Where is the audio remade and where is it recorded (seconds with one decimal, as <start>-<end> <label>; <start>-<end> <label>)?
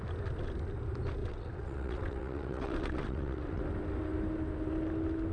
0.0-1.2 recorded; 1.2-3.6 remade; 3.6-5.3 recorded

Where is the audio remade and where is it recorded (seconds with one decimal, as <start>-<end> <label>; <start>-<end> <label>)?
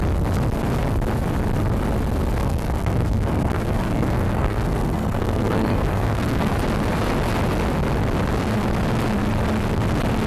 0.0-2.4 recorded; 2.4-6.5 remade; 6.5-10.3 recorded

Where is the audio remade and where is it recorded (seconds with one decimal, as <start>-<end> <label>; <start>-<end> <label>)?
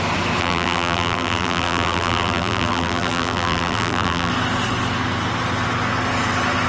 0.0-0.4 recorded; 0.4-4.3 remade; 4.3-6.7 recorded